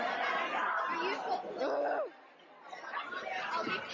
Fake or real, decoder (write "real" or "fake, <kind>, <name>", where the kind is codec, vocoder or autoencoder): real